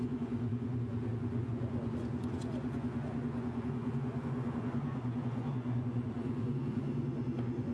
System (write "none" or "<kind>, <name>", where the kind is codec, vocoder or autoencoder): vocoder, Vocos